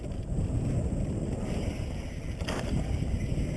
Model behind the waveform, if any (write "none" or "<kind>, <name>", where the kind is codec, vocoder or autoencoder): none